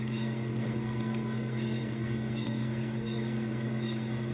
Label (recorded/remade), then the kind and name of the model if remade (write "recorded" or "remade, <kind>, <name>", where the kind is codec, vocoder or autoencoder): remade, codec, SNAC